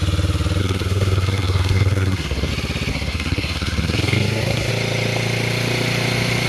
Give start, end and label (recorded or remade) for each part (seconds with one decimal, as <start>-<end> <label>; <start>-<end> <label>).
0.0-0.6 recorded; 0.6-2.5 remade; 2.5-2.9 recorded; 2.9-4.7 remade; 4.7-6.5 recorded